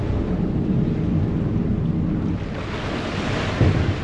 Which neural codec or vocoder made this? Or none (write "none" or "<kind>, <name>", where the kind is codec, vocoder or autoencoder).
none